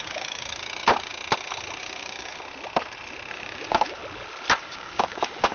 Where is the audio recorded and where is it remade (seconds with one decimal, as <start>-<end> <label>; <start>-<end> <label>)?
0.0-1.1 remade; 1.1-1.8 recorded; 1.8-2.3 remade; 2.3-3.3 recorded; 3.3-4.0 remade; 4.0-4.6 recorded; 4.6-5.5 remade